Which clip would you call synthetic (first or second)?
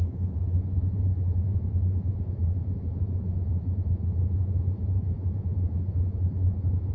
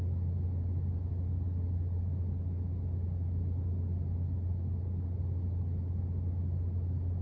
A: first